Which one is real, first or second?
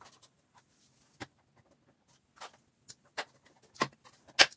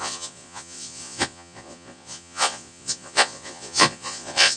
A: first